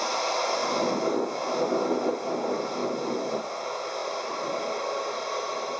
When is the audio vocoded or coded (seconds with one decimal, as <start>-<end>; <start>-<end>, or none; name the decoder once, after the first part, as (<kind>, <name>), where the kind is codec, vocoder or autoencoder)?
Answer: 0.6-1.5 (vocoder, BigVGAN v2); 2.8-3.3; 4.0-5.3